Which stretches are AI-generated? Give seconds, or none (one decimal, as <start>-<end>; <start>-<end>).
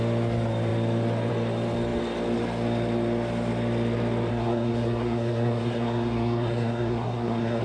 4.3-7.6